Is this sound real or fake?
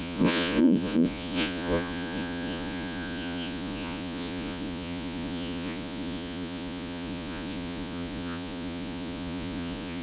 fake